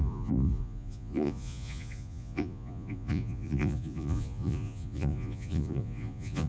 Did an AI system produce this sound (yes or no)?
yes